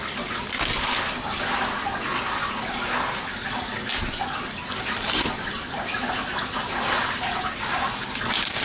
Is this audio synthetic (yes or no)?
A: no